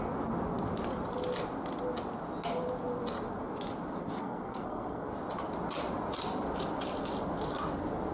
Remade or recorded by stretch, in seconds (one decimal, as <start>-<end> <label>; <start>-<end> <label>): 0.0-4.0 recorded; 4.0-5.1 remade; 5.1-8.1 recorded